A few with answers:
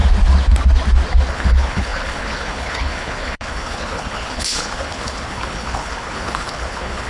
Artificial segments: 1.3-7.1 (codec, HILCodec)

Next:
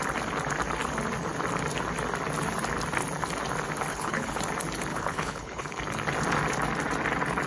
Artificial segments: 3.9-4.4 (codec, HILCodec); 4.9-5.8